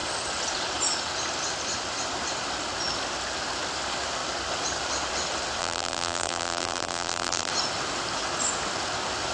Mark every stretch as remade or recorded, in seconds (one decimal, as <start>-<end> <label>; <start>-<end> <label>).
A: 0.0-5.6 recorded; 5.6-7.5 remade; 7.5-9.3 recorded

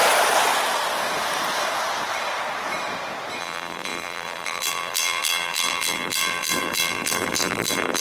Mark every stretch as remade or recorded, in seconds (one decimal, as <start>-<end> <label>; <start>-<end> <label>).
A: 0.0-3.4 recorded; 3.4-8.0 remade

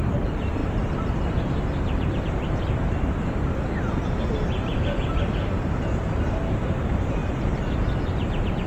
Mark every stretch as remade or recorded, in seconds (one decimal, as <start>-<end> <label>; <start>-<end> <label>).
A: 0.0-7.2 remade; 7.2-8.7 recorded

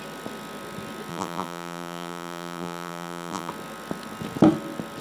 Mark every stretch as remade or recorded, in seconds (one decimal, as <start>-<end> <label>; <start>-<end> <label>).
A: 0.0-1.1 recorded; 1.1-3.5 remade; 3.5-5.0 recorded